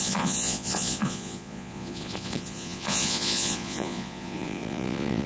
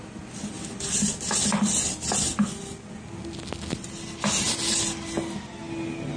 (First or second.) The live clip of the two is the second